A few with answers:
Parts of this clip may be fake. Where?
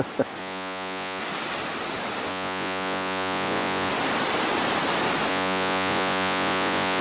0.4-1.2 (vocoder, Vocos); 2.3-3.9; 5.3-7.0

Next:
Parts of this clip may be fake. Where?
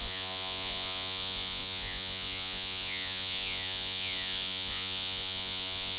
0.0-6.0 (vocoder, Vocos)